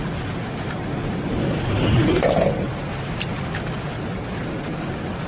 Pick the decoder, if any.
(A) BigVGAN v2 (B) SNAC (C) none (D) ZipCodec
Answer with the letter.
C